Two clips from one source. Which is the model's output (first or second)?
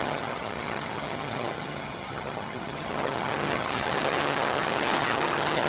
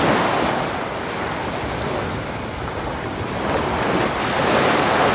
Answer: first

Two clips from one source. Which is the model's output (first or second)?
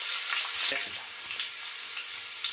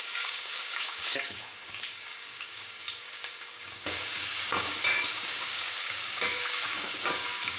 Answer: second